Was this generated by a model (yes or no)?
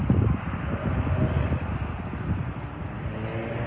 no